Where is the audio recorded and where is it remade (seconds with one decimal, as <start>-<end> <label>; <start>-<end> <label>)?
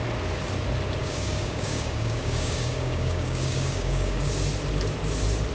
0.0-1.0 recorded; 1.0-4.3 remade; 4.3-5.5 recorded